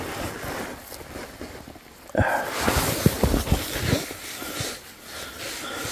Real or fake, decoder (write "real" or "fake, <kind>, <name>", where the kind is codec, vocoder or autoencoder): real